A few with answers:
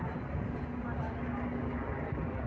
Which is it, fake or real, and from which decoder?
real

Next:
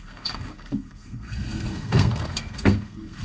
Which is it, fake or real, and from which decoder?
fake, codec, SNAC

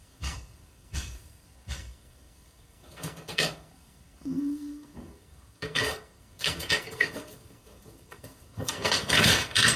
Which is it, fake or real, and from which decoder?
fake, codec, SNAC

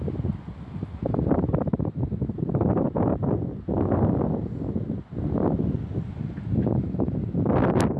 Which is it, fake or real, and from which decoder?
real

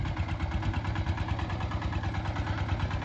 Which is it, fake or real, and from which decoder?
real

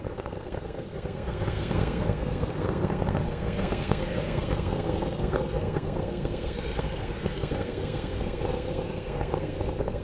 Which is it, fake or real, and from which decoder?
fake, codec, SNAC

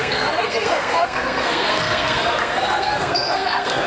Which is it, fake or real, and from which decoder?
fake, codec, SNAC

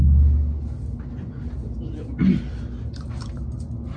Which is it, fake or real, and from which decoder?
real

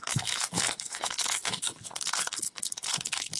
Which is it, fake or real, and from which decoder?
fake, codec, SNAC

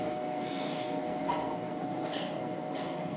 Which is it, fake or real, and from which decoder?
fake, codec, SNAC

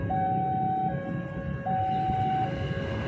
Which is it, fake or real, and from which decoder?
real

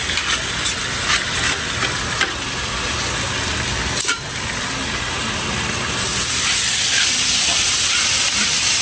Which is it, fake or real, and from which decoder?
real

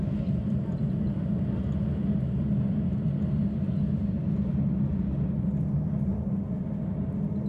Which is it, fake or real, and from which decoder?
real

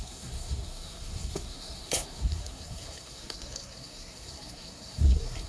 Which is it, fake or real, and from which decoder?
fake, codec, SNAC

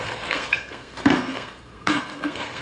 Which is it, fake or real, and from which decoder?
fake, codec, SNAC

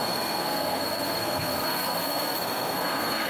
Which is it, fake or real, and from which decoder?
fake, codec, SNAC